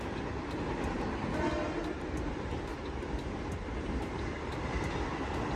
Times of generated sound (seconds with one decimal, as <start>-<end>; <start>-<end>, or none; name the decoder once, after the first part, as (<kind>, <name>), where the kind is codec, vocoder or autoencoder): 2.7-4.8 (vocoder, BigVGAN v2)